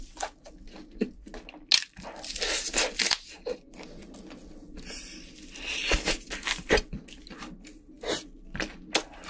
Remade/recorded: recorded